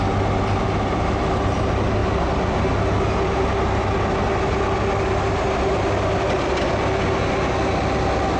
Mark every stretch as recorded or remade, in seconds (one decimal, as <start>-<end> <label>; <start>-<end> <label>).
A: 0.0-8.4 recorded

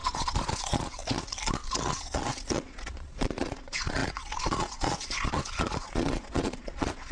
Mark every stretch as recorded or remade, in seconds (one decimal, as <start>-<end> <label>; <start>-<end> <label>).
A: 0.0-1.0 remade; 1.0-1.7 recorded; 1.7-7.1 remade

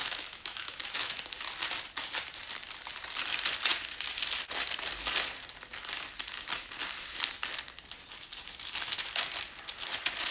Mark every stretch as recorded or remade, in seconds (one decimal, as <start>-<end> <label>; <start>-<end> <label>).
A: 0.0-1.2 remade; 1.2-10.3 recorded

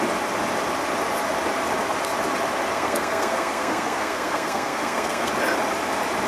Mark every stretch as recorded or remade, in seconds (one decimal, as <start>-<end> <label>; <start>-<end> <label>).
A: 0.0-2.7 recorded; 2.7-5.3 remade; 5.3-6.3 recorded